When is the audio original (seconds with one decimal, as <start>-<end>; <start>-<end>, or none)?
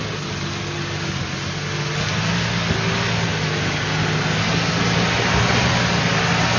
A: 0.0-6.6